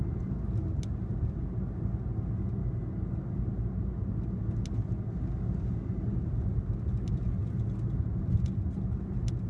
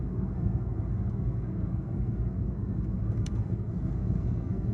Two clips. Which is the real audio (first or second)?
first